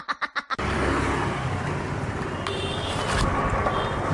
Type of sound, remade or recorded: recorded